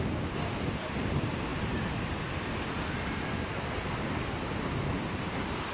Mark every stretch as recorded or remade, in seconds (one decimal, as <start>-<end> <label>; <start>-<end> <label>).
0.0-5.7 recorded